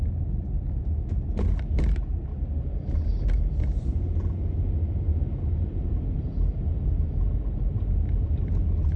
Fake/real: real